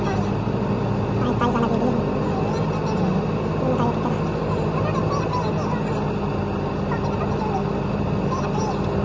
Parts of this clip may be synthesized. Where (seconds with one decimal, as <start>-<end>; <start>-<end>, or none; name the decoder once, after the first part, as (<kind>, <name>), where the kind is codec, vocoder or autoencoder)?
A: none